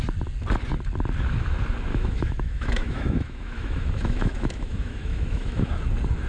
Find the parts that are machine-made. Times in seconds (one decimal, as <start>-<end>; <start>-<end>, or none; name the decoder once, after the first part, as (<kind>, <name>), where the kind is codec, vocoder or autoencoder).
1.9-5.7 (autoencoder, DAC-VAE)